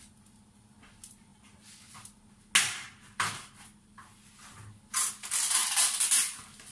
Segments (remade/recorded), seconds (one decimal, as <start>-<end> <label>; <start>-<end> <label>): 0.0-6.7 recorded